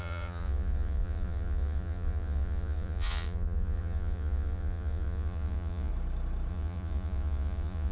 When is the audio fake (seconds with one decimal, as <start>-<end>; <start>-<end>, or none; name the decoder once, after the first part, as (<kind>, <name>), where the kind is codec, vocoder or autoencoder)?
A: 0.0-5.9 (vocoder, Vocos); 6.5-7.9